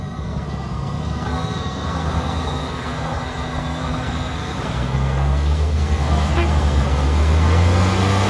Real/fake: fake